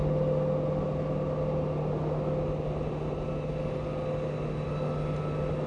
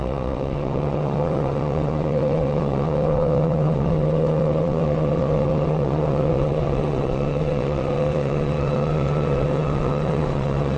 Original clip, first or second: first